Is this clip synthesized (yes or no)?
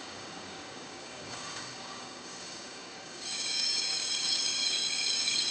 yes